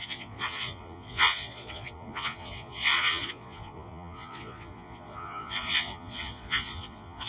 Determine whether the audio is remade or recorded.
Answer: remade